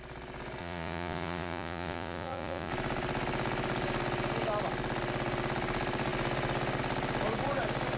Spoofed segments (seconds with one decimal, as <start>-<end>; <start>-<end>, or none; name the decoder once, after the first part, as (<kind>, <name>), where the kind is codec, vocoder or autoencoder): 0.6-2.7 (vocoder, Vocos)